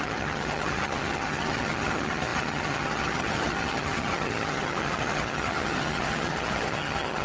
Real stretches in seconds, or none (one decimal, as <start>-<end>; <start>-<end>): none